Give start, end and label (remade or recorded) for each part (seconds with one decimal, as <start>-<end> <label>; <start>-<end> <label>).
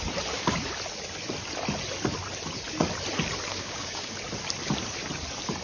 0.0-3.5 recorded; 3.5-4.1 remade; 4.1-5.6 recorded